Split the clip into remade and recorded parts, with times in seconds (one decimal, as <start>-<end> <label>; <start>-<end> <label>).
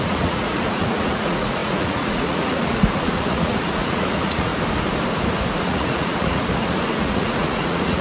0.0-4.5 remade; 4.5-5.6 recorded; 5.6-8.0 remade